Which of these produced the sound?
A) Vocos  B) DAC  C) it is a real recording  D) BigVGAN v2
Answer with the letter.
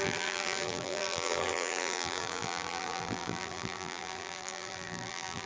D